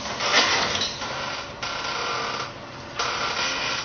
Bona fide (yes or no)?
no